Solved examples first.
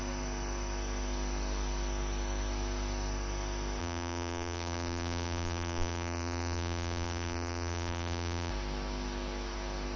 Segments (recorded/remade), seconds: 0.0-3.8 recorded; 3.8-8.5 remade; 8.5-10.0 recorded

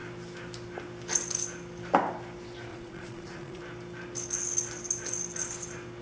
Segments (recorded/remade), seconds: 0.0-2.7 recorded; 2.7-3.6 remade; 3.6-6.0 recorded

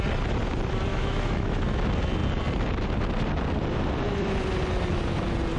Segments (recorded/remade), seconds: 0.0-0.9 recorded; 0.9-1.6 remade; 1.6-5.6 recorded

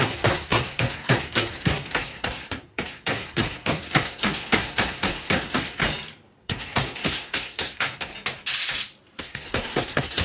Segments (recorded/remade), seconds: 0.0-5.8 remade; 5.8-6.4 recorded; 6.4-8.1 remade; 8.1-9.2 recorded; 9.2-10.2 remade

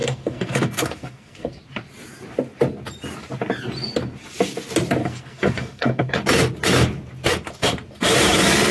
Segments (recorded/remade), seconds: 0.0-1.6 remade; 1.6-5.0 recorded; 5.0-6.2 remade; 6.2-8.7 recorded

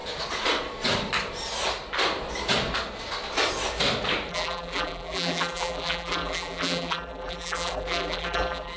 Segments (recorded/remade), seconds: 0.0-4.3 recorded; 4.3-8.8 remade

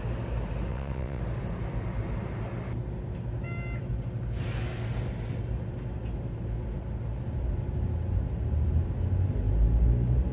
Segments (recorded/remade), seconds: 0.0-0.7 recorded; 0.7-1.2 remade; 1.2-10.3 recorded

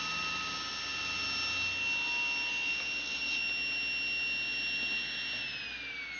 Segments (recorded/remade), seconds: 0.0-6.2 recorded